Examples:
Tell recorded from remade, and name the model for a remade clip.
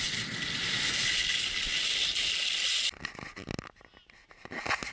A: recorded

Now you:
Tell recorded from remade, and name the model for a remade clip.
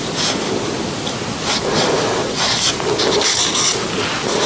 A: recorded